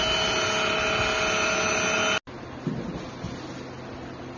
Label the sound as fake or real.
real